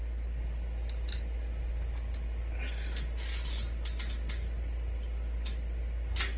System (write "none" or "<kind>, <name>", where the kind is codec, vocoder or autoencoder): none